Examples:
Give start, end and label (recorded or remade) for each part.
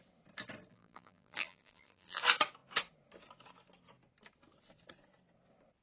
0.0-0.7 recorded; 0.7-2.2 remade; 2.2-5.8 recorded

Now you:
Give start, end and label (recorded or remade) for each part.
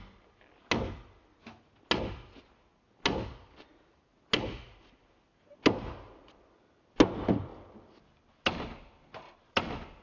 0.0-10.0 recorded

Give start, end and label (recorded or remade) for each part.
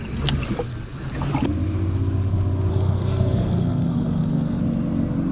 0.0-2.7 recorded; 2.7-4.6 remade; 4.6-5.3 recorded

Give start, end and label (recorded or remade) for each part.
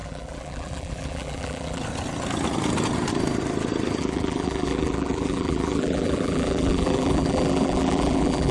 0.0-1.8 remade; 1.8-4.0 recorded; 4.0-8.5 remade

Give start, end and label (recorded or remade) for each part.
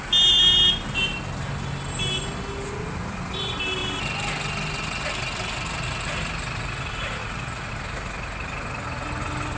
0.0-7.2 recorded; 7.2-7.7 remade; 7.7-9.6 recorded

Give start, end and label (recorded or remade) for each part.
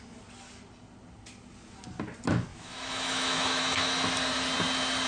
0.0-2.5 recorded; 2.5-3.6 remade; 3.6-5.1 recorded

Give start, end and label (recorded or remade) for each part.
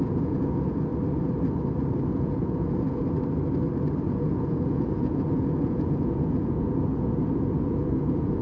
0.0-0.9 remade; 0.9-2.1 recorded; 2.1-3.0 remade; 3.0-4.1 recorded; 4.1-8.4 remade